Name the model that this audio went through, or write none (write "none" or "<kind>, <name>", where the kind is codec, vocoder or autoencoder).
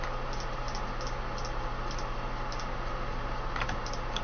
none